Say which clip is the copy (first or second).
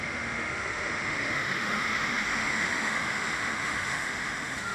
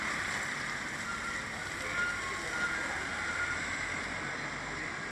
first